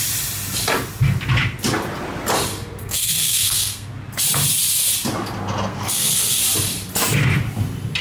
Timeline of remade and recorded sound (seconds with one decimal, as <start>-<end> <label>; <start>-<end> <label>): 0.0-2.8 recorded; 2.8-3.9 remade; 3.9-5.7 recorded; 5.7-6.4 remade; 6.4-8.0 recorded